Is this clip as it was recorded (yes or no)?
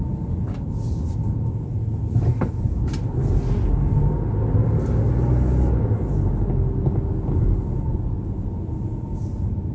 yes